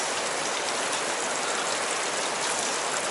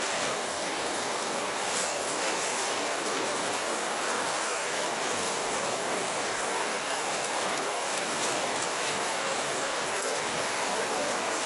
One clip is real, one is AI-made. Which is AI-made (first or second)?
second